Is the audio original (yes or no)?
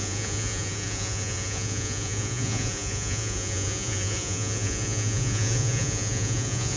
no